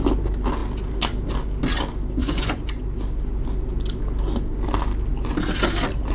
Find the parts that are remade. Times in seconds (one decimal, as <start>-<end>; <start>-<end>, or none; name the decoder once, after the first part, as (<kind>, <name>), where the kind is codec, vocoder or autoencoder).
2.2-2.8 (vocoder, Vocos)